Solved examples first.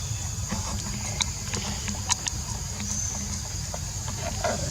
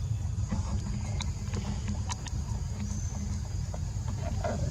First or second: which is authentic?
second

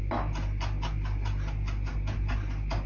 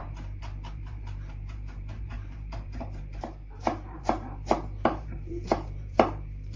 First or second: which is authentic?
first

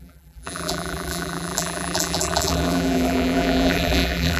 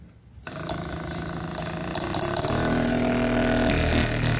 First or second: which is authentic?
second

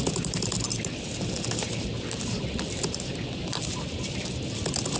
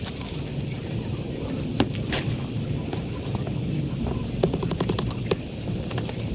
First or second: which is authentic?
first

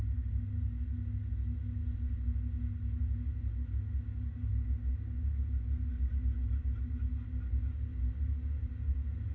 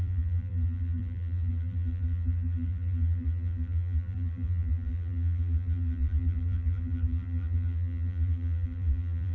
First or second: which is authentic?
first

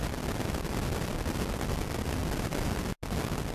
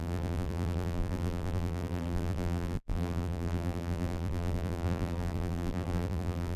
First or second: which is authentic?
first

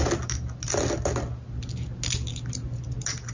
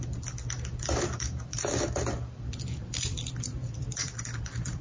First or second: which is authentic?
first